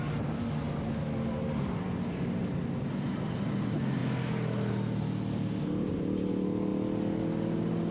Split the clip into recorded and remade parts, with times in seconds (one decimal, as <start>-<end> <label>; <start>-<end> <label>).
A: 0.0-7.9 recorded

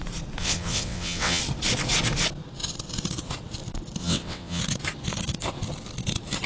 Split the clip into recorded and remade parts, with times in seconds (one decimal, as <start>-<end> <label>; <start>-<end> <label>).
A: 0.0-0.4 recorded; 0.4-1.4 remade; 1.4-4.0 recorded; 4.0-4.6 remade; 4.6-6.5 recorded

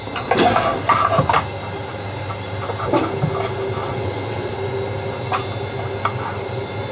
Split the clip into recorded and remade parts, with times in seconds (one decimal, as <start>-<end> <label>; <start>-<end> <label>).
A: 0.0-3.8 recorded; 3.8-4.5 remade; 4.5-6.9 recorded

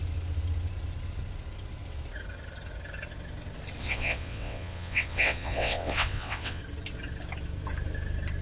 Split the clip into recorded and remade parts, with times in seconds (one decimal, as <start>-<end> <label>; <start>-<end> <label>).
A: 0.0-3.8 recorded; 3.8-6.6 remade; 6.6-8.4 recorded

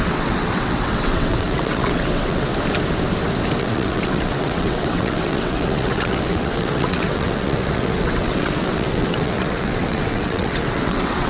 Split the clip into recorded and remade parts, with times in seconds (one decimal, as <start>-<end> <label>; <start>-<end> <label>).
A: 0.0-2.5 remade; 2.5-3.6 recorded; 3.6-11.3 remade

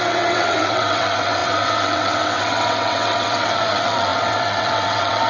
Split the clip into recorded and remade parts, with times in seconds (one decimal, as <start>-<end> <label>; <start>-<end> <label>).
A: 0.0-5.3 remade

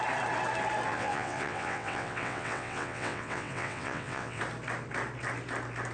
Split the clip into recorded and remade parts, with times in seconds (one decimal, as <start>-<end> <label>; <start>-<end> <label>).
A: 0.0-0.9 recorded; 0.9-4.4 remade; 4.4-5.9 recorded

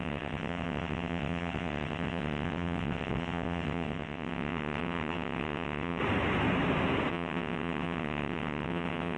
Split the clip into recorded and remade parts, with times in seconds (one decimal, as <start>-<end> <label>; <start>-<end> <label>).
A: 0.0-6.0 remade; 6.0-7.1 recorded; 7.1-9.2 remade